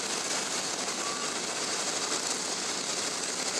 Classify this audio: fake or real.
real